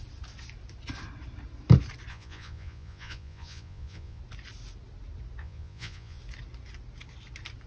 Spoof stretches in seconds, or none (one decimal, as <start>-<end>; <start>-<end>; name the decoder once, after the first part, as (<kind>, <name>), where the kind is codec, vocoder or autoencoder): 2.1-4.2 (vocoder, Vocos); 5.4-6.2